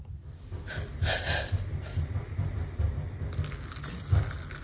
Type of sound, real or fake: real